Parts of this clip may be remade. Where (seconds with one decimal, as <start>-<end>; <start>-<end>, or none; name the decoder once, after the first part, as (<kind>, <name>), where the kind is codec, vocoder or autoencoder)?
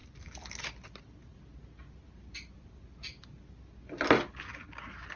none